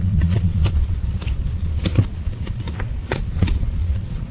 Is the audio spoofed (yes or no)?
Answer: yes